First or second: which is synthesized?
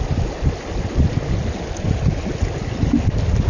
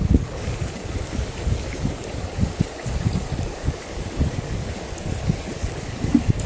second